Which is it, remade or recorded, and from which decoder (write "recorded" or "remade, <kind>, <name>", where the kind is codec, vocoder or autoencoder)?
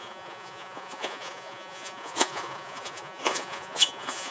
remade, vocoder, Vocos